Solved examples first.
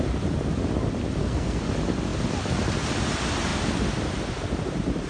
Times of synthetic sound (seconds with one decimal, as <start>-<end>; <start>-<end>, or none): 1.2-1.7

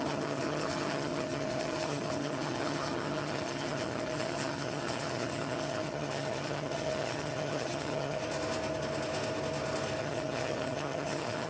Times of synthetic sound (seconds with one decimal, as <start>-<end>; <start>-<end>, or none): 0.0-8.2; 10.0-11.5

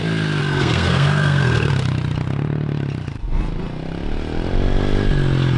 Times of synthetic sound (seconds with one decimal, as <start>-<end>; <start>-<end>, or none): 0.4-1.7

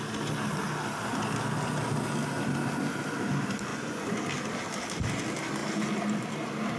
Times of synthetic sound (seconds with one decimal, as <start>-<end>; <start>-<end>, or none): 3.7-4.2

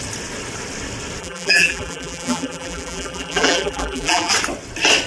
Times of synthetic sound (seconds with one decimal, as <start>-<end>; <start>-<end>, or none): 1.2-4.3

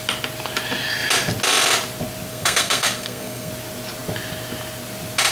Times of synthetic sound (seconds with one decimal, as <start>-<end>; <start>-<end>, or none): 2.3-3.5